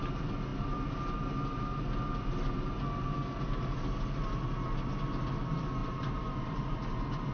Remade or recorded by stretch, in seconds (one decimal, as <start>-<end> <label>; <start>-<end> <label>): 0.0-5.8 recorded; 5.8-6.3 remade; 6.3-7.3 recorded